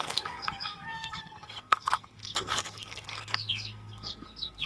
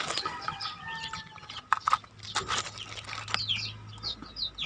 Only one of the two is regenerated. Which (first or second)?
first